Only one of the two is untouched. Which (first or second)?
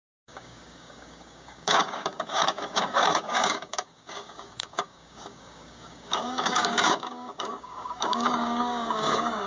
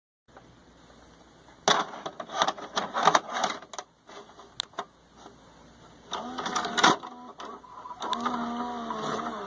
second